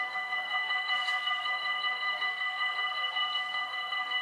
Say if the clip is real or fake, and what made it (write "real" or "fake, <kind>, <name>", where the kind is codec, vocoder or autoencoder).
fake, codec, SNAC